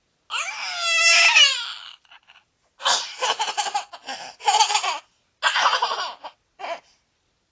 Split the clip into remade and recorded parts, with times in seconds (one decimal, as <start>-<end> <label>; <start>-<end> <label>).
0.0-7.5 recorded